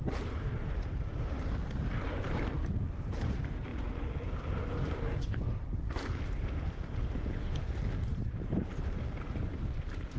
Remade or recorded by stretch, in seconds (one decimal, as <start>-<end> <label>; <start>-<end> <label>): 0.0-1.1 remade; 1.1-1.8 recorded; 1.8-3.7 remade; 3.7-7.0 recorded; 7.0-10.2 remade